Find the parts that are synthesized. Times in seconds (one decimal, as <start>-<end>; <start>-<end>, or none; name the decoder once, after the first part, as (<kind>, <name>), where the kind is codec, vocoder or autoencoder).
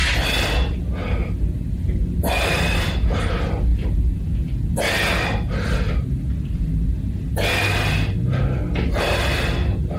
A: none